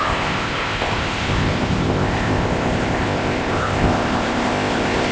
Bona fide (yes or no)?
no